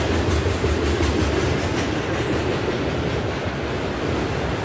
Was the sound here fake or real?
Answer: real